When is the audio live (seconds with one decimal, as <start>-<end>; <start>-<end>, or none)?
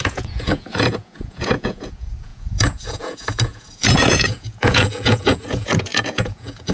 none